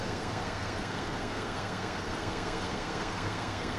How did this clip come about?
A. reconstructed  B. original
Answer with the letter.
A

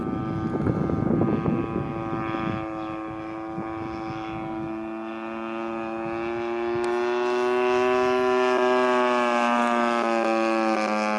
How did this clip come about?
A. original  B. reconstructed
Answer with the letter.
A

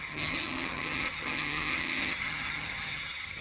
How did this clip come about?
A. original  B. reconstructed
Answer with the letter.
B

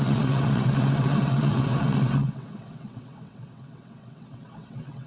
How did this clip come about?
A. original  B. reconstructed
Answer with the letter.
B